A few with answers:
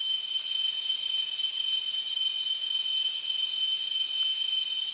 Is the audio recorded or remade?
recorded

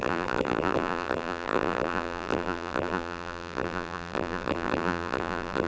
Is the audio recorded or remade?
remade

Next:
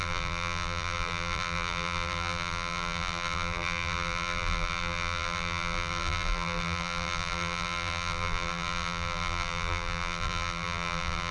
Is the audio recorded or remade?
remade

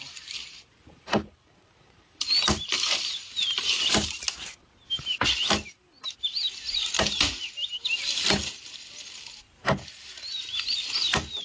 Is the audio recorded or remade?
recorded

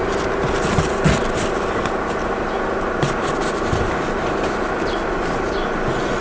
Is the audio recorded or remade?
recorded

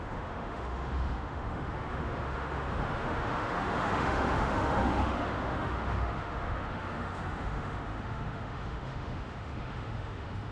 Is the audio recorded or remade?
remade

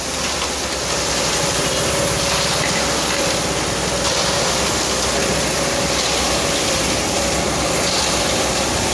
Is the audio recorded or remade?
recorded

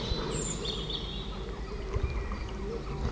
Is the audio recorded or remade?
recorded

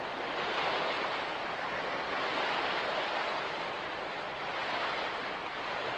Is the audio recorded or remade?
recorded